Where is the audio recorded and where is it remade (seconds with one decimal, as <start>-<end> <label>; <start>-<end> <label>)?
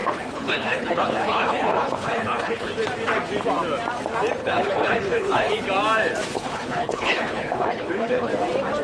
0.0-2.7 remade; 2.7-4.4 recorded; 4.4-5.5 remade; 5.5-6.3 recorded; 6.3-8.3 remade; 8.3-8.8 recorded